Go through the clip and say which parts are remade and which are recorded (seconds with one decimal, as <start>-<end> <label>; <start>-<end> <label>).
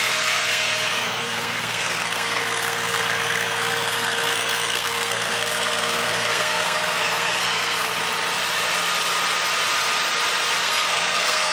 0.0-7.9 remade; 7.9-10.6 recorded; 10.6-11.5 remade